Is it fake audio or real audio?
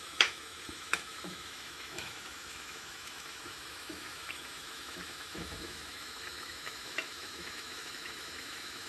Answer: fake